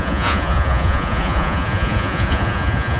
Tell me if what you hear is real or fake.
fake